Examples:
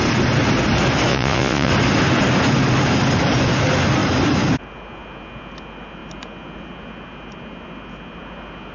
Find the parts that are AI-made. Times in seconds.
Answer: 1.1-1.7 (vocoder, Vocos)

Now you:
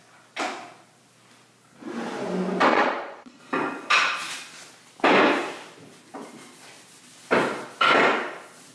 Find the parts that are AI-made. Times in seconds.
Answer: 2.7-3.4 (vocoder, Vocos)